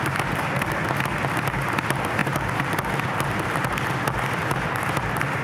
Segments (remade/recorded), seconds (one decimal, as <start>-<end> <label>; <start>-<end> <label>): 0.0-5.4 recorded